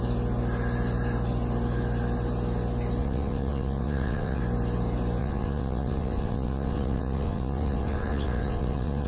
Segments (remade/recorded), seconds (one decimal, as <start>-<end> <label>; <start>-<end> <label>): 0.0-3.0 recorded; 3.0-4.4 remade; 4.4-5.2 recorded; 5.2-9.1 remade